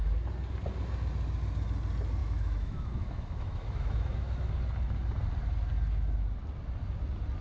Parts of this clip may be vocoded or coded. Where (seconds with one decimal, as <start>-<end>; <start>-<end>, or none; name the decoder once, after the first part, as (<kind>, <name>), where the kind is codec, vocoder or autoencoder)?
2.2-4.5 (autoencoder, DAC-VAE)